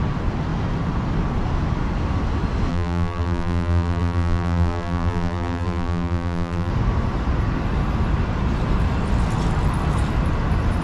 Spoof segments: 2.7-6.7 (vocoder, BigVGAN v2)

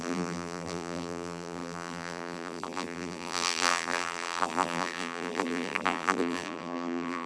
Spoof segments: 0.0-7.3 (vocoder, BigVGAN v2)

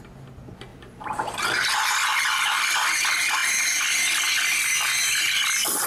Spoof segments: 0.7-1.3 (vocoder, BigVGAN v2)